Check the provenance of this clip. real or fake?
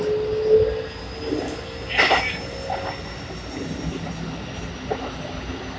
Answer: real